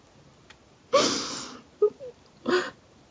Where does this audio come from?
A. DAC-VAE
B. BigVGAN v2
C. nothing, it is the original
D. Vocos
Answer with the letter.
C